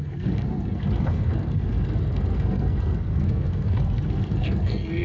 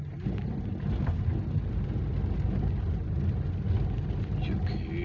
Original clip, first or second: second